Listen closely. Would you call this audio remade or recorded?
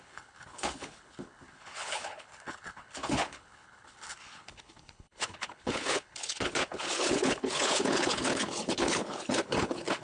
remade